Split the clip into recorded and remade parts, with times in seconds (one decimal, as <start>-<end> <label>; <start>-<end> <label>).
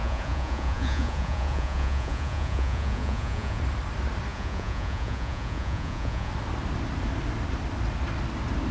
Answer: 0.0-3.6 remade; 3.6-4.3 recorded; 4.3-6.3 remade; 6.3-8.7 recorded